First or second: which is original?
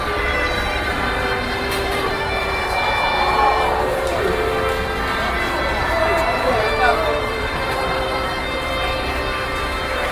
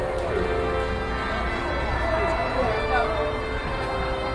second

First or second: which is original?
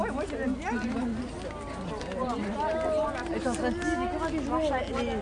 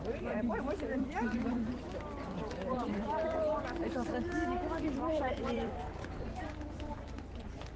first